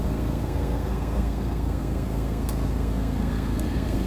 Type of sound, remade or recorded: remade